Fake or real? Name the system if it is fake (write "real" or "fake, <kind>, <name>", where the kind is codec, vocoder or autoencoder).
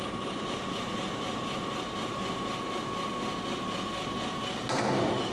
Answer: real